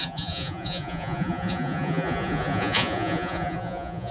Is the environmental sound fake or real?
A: fake